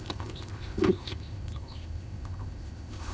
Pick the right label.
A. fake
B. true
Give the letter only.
A